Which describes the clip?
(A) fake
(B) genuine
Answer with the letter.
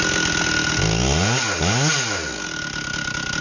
B